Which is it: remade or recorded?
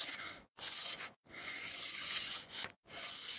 remade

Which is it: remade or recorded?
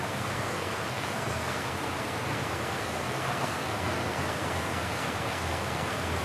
remade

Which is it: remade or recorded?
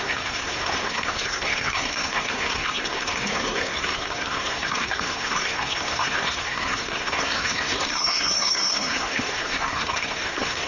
remade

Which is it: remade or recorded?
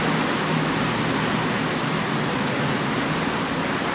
recorded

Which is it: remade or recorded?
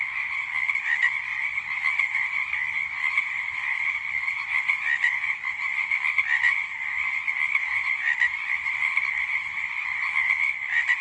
recorded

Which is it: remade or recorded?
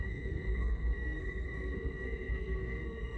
remade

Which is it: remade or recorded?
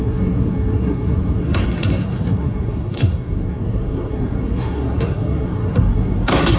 remade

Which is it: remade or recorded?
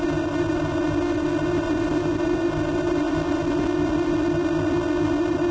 recorded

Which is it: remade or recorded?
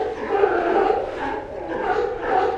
recorded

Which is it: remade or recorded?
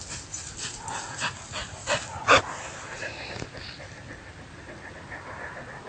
recorded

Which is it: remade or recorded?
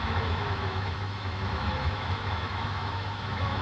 remade